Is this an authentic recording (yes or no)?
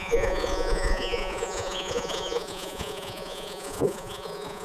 no